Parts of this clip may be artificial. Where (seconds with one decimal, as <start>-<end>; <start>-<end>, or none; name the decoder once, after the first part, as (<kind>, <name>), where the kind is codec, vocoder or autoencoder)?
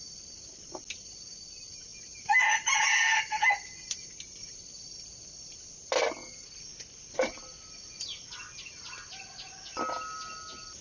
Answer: none